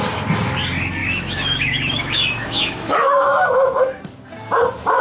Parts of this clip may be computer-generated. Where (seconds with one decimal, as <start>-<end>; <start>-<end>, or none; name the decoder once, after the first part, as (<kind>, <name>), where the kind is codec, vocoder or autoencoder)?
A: 1.0-4.0 (autoencoder, DAC-VAE)